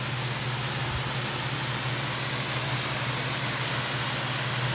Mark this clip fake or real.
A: real